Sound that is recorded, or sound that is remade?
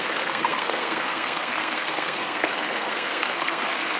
remade